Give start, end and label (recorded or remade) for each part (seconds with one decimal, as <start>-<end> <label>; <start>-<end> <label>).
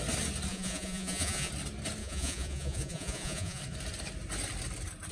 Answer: 0.0-0.5 recorded; 0.5-1.5 remade; 1.5-2.0 recorded; 2.0-3.6 remade; 3.6-5.1 recorded